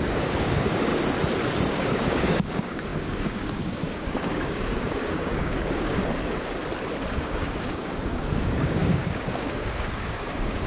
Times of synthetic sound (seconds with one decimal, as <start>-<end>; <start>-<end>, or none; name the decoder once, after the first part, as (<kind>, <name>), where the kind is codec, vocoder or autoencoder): 0.0-0.9 (codec, DAC); 1.7-6.0; 7.1-10.7

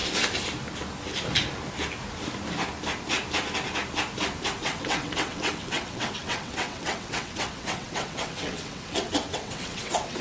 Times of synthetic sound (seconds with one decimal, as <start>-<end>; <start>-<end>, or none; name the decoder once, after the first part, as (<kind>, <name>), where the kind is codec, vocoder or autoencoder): 4.6-10.2 (vocoder, WaveNeXt)